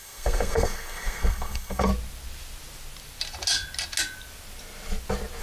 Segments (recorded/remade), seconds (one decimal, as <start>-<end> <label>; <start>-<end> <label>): 0.0-1.9 remade; 1.9-5.4 recorded